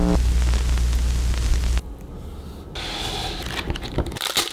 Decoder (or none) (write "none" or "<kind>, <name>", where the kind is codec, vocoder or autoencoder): none